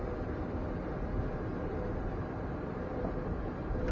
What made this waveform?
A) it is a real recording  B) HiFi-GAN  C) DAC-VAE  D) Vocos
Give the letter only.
A